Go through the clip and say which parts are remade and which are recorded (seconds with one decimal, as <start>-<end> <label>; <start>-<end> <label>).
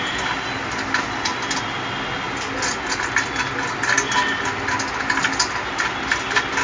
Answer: 0.0-6.6 recorded